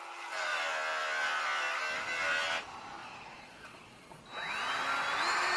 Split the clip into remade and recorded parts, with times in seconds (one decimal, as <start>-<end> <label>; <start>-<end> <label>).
0.0-3.0 recorded; 3.0-4.2 remade; 4.2-5.6 recorded